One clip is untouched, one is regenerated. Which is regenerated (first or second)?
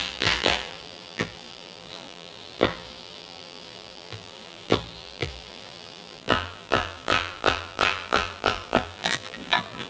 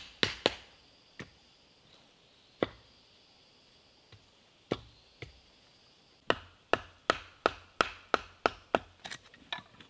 first